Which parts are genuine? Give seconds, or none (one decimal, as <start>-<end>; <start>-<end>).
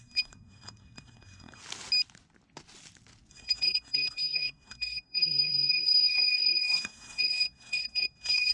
1.6-3.3